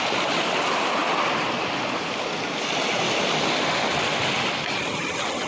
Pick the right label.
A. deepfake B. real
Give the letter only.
B